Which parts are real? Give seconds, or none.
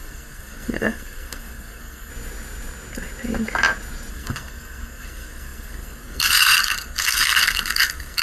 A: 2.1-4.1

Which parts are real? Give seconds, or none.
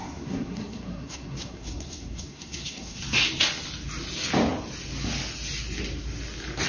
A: 3.0-6.7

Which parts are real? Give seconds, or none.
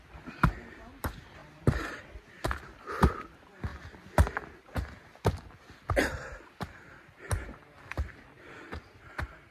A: 0.0-9.5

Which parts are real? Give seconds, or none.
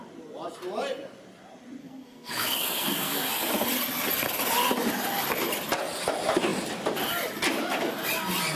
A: 0.0-1.8; 3.3-8.6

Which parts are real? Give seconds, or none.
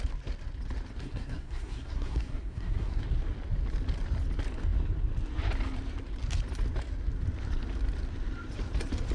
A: 0.0-1.0; 3.0-9.1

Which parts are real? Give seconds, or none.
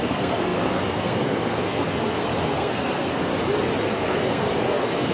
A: 3.3-3.8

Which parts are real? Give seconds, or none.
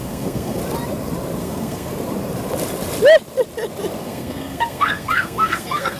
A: 0.6-1.4; 1.9-4.0